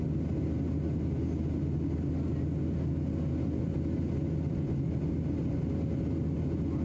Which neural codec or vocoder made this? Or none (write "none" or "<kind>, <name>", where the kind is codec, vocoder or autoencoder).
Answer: none